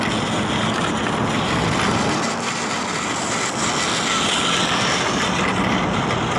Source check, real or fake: real